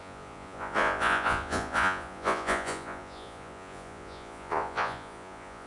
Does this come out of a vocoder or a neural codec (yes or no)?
yes